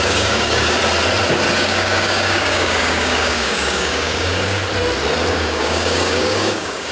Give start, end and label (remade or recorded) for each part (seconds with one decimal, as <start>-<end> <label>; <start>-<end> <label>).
0.0-0.8 remade; 0.8-1.6 recorded; 1.6-4.6 remade; 4.6-5.3 recorded; 5.3-6.9 remade